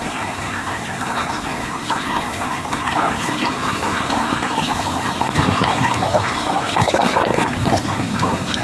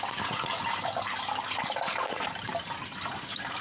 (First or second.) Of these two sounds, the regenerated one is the first